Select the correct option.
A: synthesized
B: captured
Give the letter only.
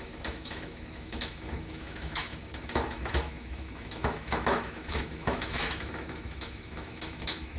A